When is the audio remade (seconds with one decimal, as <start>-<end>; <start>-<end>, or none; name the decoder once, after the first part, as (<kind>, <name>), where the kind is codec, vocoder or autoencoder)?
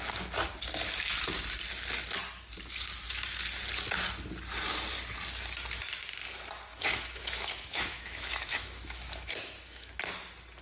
6.7-10.0 (autoencoder, DAC-VAE)